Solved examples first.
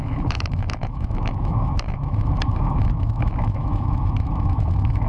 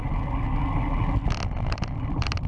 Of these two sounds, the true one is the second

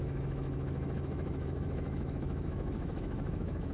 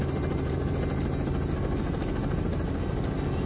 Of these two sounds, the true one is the second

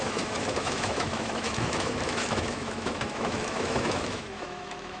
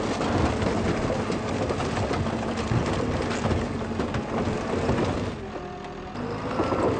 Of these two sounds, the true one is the second